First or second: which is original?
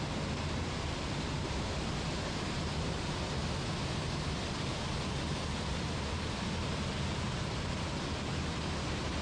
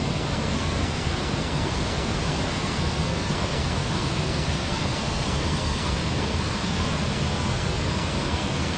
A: first